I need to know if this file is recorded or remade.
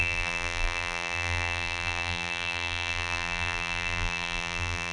remade